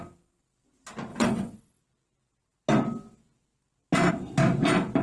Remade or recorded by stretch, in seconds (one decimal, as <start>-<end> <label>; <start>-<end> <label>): 0.0-1.1 recorded; 1.1-1.8 remade; 1.8-5.0 recorded